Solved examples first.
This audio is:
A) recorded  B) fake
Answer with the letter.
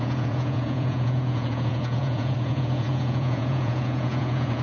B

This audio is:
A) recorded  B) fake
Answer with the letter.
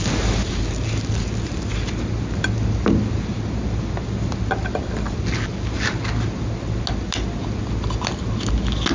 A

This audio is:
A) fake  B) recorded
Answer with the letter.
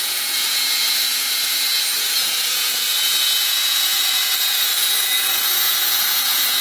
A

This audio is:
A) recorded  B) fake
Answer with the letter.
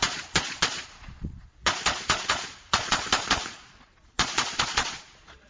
B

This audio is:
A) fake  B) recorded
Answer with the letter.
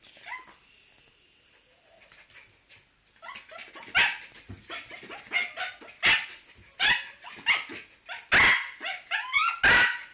B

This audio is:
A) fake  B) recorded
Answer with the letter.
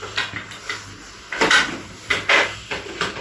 B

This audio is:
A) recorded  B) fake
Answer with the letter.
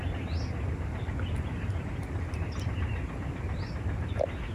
A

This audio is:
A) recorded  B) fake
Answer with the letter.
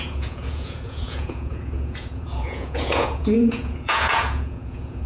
B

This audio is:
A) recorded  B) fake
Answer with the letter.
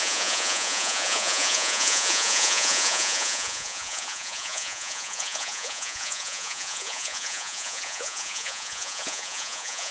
B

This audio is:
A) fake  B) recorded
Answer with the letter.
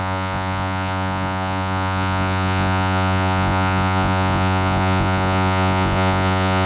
A